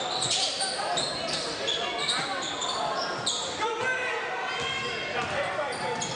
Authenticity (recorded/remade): recorded